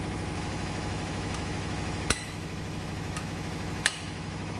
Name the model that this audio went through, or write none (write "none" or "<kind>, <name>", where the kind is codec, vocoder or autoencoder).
autoencoder, DAC-VAE